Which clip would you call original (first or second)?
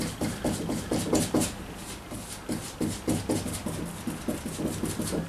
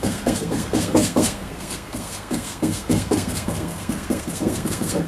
first